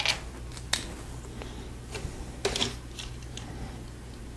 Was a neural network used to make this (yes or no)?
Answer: no